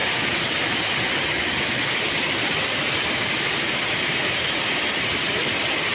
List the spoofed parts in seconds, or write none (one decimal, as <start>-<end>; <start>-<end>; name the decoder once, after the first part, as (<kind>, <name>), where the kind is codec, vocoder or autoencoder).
none